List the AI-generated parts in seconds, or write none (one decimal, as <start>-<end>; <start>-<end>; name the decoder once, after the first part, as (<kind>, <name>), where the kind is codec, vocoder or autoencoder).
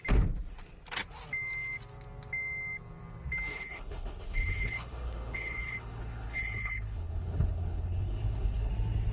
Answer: 3.5-8.7 (codec, HILCodec)